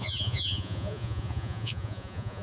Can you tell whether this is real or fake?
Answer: fake